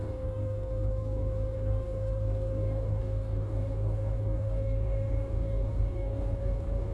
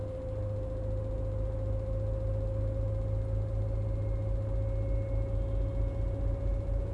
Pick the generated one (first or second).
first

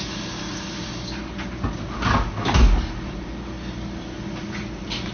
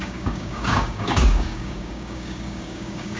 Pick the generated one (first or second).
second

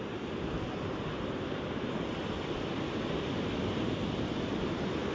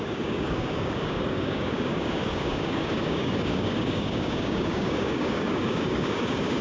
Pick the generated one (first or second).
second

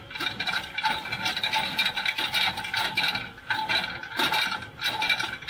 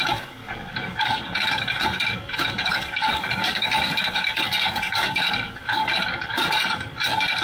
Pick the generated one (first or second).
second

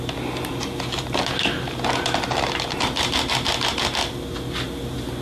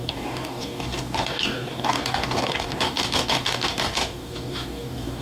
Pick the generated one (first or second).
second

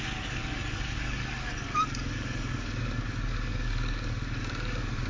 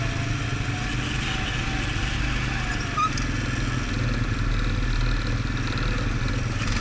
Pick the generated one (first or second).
first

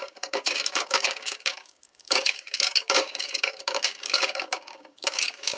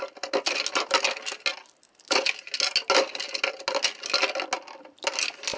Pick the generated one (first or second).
first